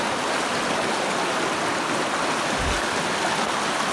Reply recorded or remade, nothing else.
recorded